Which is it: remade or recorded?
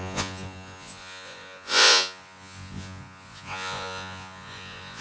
remade